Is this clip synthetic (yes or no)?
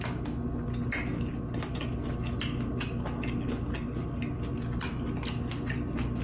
no